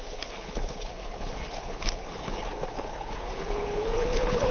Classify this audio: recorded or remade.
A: remade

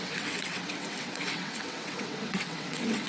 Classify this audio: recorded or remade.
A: remade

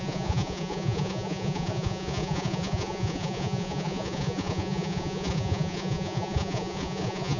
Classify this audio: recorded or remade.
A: remade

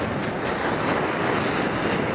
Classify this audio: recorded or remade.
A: recorded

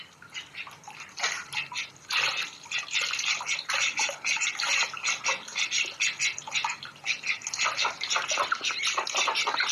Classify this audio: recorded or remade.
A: recorded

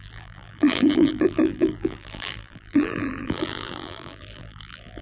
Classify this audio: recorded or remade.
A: remade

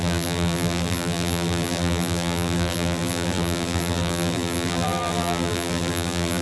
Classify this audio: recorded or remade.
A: remade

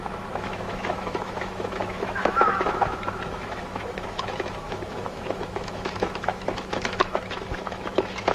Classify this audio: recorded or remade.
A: remade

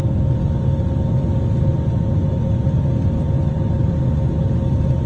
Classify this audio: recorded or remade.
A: recorded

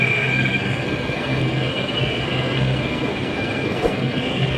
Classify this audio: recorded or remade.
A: remade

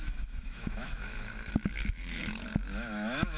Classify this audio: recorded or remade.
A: remade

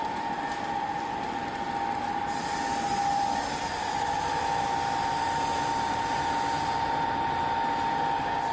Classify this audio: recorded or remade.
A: recorded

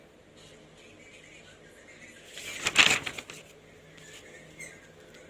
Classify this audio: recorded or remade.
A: recorded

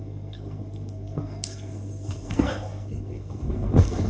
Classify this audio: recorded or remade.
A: remade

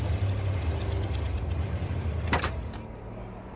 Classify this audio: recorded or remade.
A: recorded